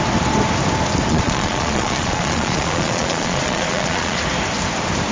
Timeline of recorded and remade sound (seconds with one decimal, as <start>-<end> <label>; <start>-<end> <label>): 0.0-1.1 recorded; 1.1-4.2 remade; 4.2-5.1 recorded